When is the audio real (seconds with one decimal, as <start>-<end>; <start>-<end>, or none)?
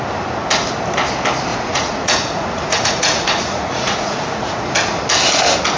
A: 0.0-1.5; 4.7-5.8